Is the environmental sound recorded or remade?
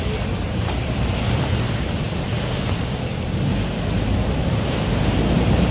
recorded